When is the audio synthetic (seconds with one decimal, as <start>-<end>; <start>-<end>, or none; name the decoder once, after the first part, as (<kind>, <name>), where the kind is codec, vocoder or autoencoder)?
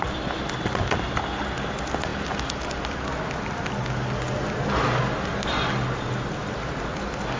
none